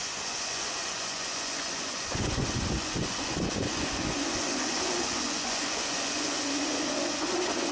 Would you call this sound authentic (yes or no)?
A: no